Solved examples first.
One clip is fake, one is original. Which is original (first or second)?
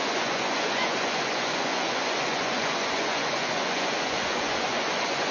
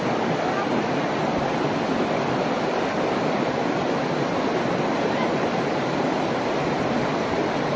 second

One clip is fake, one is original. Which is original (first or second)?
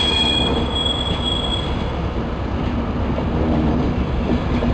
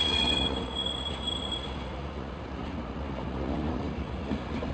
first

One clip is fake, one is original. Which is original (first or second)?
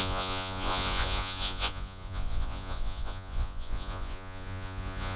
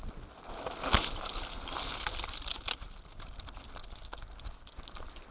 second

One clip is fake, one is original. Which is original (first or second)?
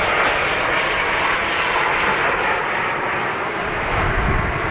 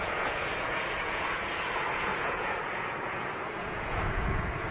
first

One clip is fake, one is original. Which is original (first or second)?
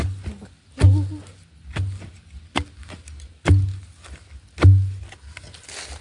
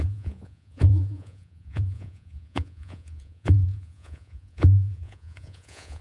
first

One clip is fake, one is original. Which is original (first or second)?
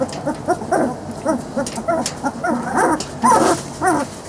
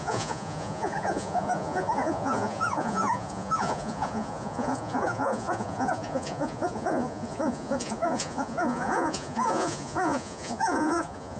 first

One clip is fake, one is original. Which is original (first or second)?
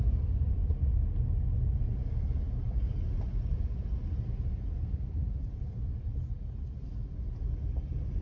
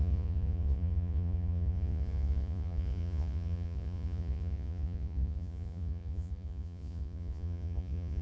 first